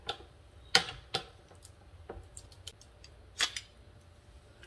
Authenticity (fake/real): real